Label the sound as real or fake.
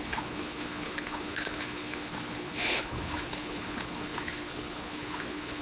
fake